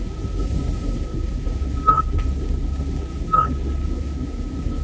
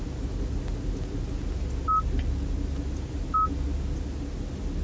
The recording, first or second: second